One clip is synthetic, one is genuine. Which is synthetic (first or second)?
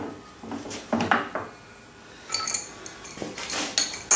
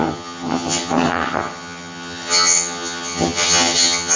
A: second